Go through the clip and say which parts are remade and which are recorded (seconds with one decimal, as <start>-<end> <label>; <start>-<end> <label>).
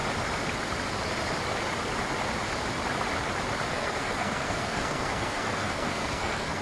0.0-3.7 recorded; 3.7-6.6 remade